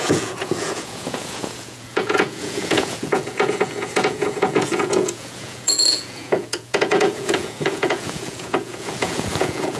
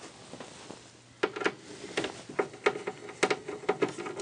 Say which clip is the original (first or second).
second